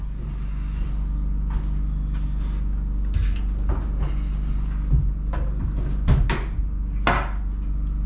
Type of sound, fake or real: real